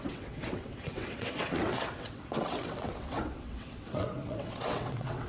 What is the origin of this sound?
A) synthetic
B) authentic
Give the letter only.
A